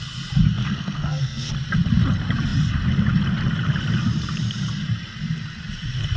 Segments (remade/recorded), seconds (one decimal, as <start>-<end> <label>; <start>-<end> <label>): 0.0-0.6 recorded; 0.6-1.5 remade; 1.5-6.2 recorded